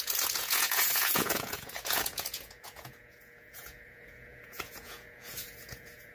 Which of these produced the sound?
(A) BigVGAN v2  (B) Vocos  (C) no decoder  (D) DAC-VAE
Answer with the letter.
B